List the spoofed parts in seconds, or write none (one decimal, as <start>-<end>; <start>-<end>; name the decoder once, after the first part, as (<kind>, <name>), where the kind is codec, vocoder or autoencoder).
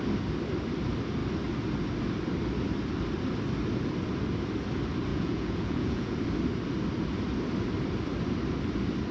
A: 5.1-6.2 (vocoder, Vocos)